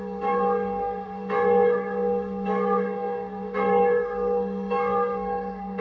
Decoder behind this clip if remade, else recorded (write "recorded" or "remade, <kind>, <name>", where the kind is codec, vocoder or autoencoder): remade, codec, SNAC